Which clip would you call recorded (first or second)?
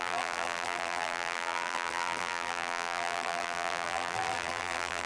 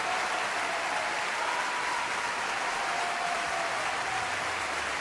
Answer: second